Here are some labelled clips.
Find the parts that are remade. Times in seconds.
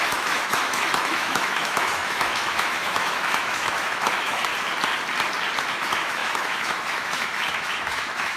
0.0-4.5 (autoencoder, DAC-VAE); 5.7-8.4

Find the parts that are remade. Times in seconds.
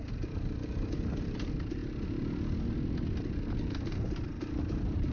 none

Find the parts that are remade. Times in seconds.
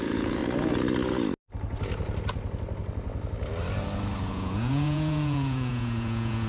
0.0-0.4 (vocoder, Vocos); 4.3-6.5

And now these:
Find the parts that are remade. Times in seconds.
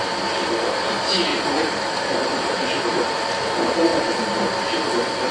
1.3-3.1 (vocoder, BigVGAN v2); 3.9-4.4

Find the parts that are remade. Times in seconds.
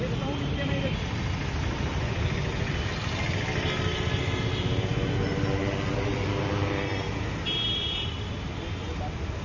none